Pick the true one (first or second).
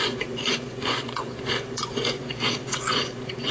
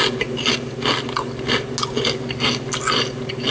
second